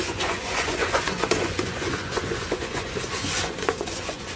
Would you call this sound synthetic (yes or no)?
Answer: yes